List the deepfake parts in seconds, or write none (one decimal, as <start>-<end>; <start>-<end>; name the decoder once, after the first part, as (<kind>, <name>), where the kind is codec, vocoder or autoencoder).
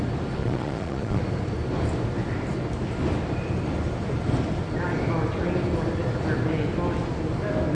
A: 0.4-1.2 (vocoder, Vocos)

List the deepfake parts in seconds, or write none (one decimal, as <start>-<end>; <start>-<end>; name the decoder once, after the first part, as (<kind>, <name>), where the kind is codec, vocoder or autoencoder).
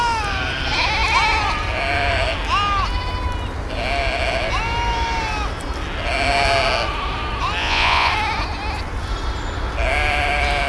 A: 7.6-8.1 (vocoder, Vocos)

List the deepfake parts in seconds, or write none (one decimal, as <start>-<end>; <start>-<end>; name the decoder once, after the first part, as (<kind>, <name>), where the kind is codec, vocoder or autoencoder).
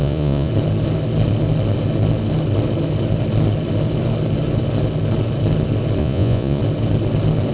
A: 0.0-0.5 (vocoder, Vocos); 6.0-6.6